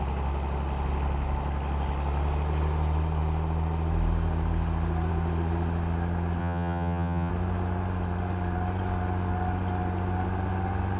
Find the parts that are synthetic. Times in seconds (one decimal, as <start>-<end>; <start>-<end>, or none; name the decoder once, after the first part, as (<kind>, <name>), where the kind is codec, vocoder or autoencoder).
6.4-7.3 (vocoder, HiFi-GAN)